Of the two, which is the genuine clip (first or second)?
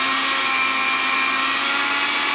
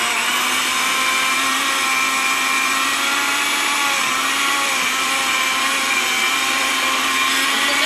first